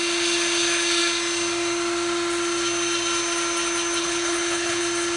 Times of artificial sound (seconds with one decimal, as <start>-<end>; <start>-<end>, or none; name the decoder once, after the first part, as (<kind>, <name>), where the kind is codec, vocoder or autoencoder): 4.0-4.8 (codec, HILCodec)